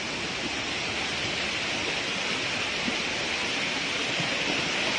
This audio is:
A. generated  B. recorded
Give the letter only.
B